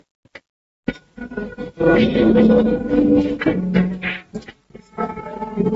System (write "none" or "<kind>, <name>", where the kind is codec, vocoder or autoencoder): none